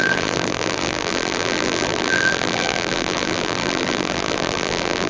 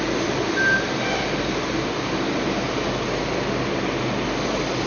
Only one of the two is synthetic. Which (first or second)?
first